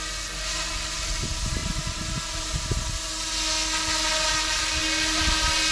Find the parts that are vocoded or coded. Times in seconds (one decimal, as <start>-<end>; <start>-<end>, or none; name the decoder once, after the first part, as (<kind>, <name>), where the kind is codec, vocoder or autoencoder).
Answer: none